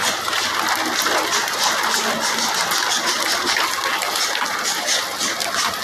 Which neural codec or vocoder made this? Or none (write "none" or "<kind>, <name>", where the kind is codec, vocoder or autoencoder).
none